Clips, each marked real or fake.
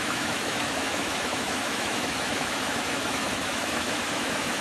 fake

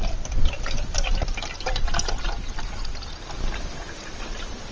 real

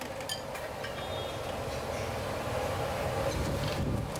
real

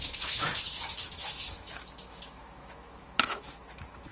fake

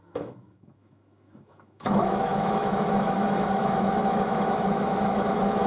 fake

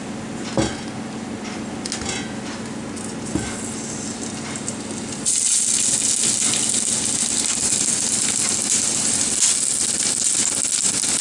real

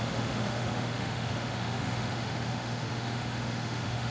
fake